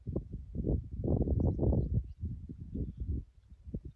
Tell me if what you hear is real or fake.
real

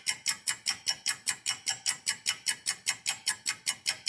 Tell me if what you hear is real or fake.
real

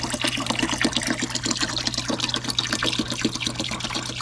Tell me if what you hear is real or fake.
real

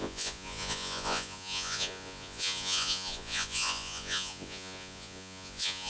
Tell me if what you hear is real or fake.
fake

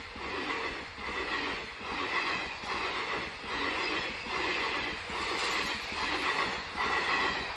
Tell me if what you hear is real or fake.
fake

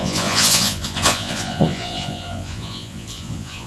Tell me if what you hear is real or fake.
fake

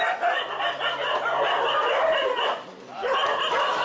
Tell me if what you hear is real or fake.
real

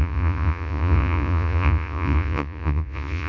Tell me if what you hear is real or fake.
fake